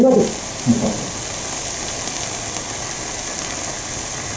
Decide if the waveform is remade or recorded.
recorded